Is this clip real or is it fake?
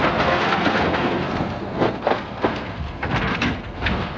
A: fake